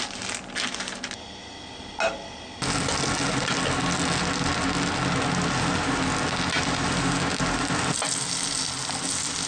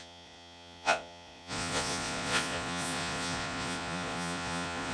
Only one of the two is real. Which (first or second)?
first